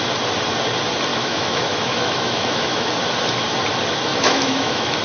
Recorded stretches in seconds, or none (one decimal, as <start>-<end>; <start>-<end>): 0.0-1.1; 2.9-4.1